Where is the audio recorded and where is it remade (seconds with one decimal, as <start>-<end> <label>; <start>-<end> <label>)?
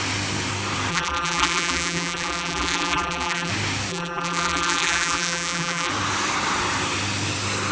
0.0-0.9 recorded; 0.9-3.5 remade; 3.5-3.9 recorded; 3.9-5.9 remade; 5.9-7.7 recorded